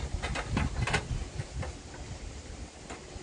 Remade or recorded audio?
recorded